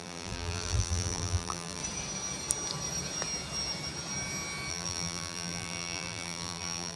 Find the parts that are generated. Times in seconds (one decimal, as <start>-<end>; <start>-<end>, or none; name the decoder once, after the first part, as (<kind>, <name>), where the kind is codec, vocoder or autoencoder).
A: 0.0-1.8 (vocoder, BigVGAN v2); 4.7-7.0